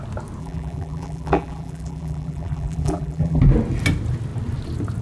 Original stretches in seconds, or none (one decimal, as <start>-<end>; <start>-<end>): 0.0-0.4; 3.4-5.0